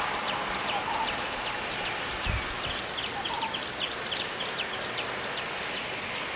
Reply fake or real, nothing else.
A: real